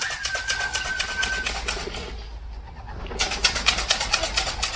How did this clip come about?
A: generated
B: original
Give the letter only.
B